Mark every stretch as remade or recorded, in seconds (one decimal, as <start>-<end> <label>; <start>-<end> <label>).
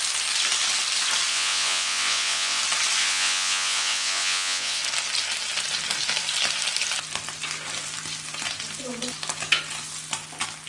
0.0-1.3 recorded; 1.3-2.6 remade; 2.6-3.0 recorded; 3.0-4.8 remade; 4.8-10.7 recorded